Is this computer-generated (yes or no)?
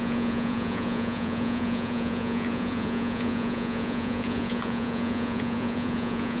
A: yes